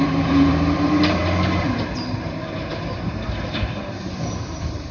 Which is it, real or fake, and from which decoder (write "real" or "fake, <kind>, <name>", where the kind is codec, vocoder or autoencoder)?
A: fake, vocoder, BigVGAN v2